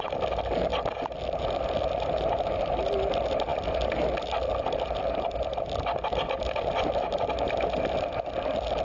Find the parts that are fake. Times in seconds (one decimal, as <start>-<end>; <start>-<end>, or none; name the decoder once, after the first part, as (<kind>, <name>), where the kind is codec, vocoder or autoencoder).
none